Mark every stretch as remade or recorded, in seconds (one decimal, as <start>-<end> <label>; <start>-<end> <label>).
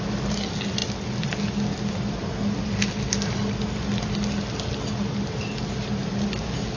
0.0-6.8 recorded